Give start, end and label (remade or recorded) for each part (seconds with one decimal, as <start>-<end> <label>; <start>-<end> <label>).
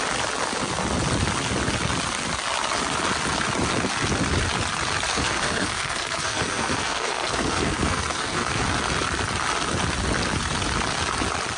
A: 0.0-5.1 recorded; 5.1-8.6 remade; 8.6-11.6 recorded